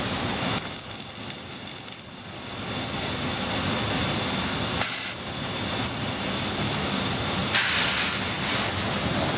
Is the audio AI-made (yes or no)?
no